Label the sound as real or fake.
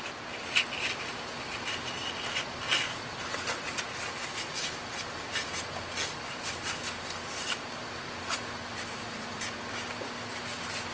real